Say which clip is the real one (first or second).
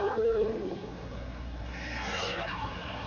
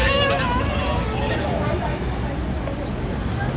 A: second